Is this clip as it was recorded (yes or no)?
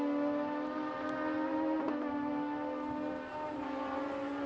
yes